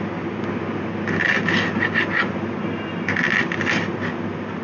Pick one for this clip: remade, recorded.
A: recorded